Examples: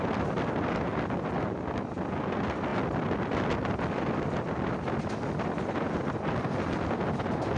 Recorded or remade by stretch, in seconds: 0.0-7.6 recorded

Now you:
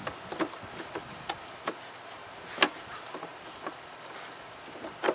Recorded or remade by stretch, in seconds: 0.0-5.1 recorded

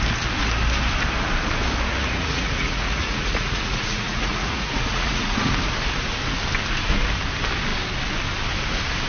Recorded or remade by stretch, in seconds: 0.0-1.9 recorded; 1.9-5.5 remade; 5.5-9.1 recorded

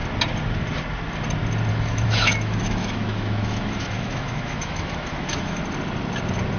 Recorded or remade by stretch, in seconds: 0.0-1.7 recorded; 1.7-5.6 remade; 5.6-6.6 recorded

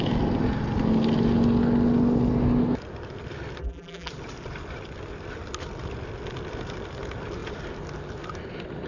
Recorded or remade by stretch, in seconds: 0.0-3.6 recorded; 3.6-4.1 remade; 4.1-8.9 recorded